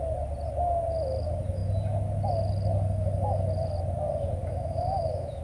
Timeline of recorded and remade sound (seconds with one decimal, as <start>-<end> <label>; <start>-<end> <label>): 0.0-4.4 recorded; 4.4-5.4 remade